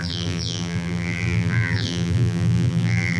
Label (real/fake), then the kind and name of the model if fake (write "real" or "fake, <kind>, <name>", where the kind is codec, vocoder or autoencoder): fake, vocoder, BigVGAN v2